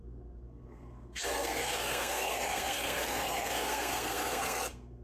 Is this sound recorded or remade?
remade